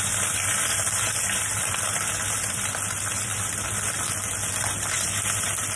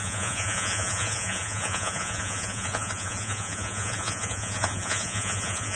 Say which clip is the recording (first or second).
first